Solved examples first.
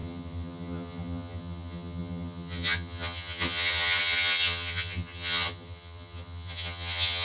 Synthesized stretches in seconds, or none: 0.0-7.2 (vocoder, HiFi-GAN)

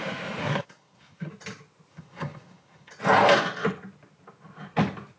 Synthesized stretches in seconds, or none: 0.4-1.3 (codec, SNAC); 1.9-2.9

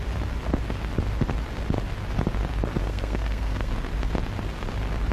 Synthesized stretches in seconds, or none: 2.8-3.7 (codec, SNAC)

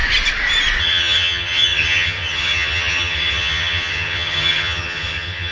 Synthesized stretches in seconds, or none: 0.8-5.5 (vocoder, HiFi-GAN)

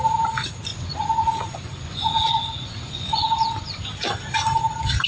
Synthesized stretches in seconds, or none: 0.7-3.8 (vocoder, Vocos)

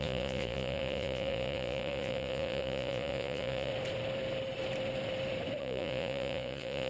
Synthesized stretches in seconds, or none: 0.0-3.7 (vocoder, Vocos); 5.6-6.9

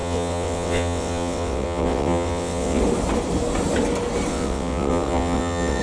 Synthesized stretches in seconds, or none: 0.0-2.8 (vocoder, WaveNeXt); 4.3-5.8